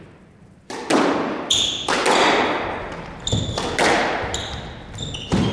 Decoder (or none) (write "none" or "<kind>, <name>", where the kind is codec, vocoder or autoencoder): none